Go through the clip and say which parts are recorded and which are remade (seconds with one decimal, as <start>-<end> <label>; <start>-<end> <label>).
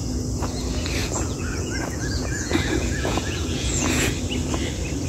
0.0-1.0 recorded; 1.0-4.1 remade; 4.1-5.1 recorded